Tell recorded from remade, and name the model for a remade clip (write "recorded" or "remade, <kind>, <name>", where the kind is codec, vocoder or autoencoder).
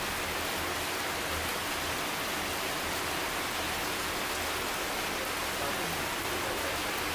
recorded